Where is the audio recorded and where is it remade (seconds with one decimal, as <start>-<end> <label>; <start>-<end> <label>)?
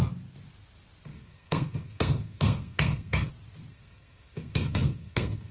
0.0-1.1 recorded; 1.1-3.3 remade; 3.3-3.7 recorded; 3.7-5.5 remade